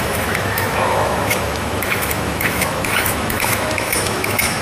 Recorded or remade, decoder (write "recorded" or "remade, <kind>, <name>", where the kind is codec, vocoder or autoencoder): remade, autoencoder, DAC-VAE